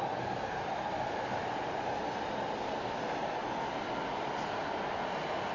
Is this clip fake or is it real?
real